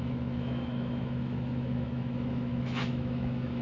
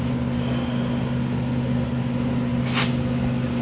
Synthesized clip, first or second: first